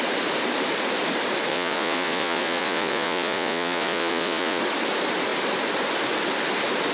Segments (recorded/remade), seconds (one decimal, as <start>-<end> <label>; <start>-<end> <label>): 0.0-1.5 recorded; 1.5-4.6 remade; 4.6-6.9 recorded